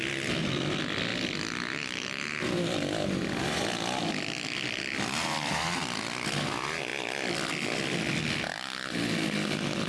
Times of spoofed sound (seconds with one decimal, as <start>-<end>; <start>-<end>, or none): none